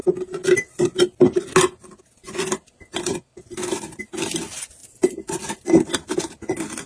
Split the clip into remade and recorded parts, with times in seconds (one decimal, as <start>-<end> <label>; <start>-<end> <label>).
0.0-4.8 recorded; 4.8-5.4 remade; 5.4-6.9 recorded